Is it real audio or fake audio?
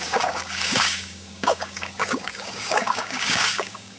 fake